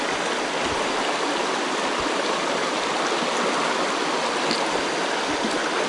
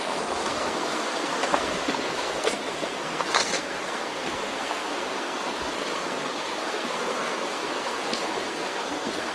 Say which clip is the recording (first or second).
first